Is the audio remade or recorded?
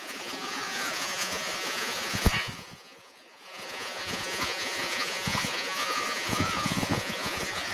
remade